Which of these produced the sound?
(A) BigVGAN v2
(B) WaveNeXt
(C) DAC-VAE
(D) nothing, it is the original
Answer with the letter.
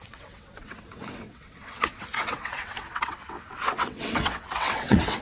B